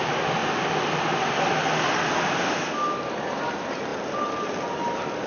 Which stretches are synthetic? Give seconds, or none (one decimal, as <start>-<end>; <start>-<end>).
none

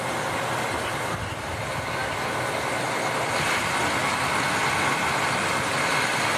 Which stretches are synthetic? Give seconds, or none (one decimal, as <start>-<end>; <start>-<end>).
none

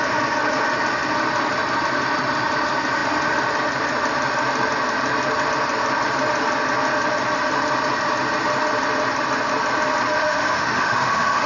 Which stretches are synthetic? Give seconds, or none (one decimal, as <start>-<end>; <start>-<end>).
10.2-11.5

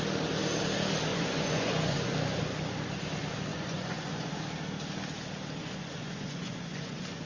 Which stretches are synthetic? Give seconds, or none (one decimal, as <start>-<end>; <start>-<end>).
1.1-2.1; 3.5-4.3; 5.6-7.3

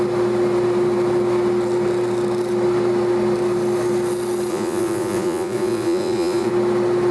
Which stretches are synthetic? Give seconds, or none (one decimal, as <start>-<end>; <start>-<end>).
4.5-6.5